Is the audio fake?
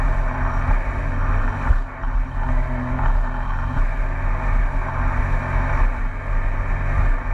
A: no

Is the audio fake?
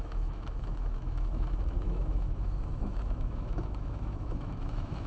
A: yes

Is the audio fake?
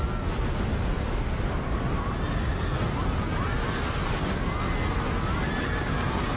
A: no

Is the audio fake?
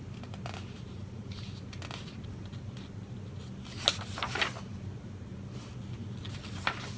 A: no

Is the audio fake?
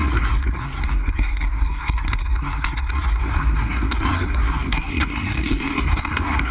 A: yes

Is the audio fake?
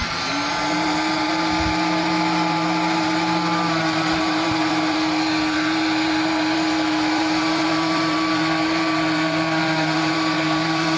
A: yes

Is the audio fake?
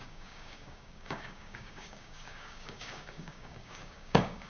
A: yes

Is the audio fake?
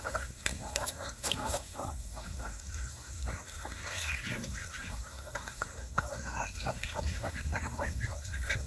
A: yes